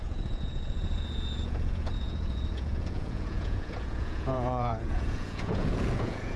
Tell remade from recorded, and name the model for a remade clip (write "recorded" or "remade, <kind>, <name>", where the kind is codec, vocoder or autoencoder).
remade, vocoder, Vocos